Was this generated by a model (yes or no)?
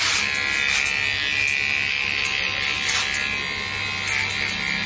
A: no